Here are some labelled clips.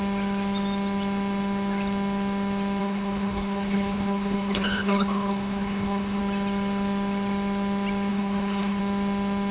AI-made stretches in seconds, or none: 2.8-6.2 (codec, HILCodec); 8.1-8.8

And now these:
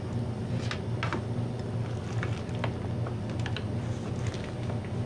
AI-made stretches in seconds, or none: none

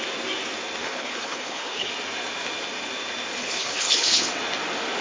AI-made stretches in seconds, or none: 0.8-1.9 (codec, HILCodec); 3.4-4.3